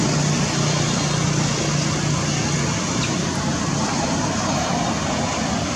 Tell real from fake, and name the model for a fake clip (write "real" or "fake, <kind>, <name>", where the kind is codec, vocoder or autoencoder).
real